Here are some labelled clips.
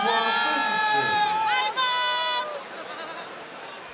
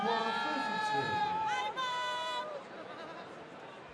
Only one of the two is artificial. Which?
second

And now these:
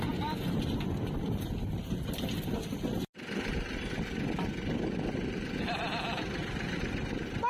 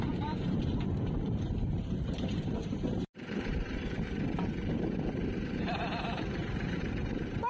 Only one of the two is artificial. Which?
second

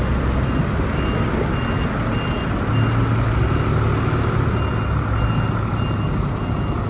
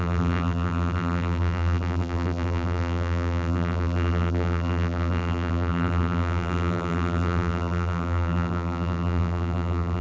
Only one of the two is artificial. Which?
second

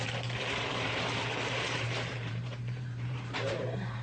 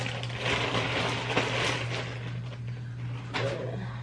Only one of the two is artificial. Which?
first